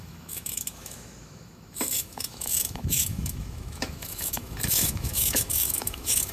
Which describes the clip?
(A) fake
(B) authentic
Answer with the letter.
A